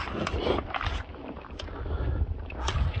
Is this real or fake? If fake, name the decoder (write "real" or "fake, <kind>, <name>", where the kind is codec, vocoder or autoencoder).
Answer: real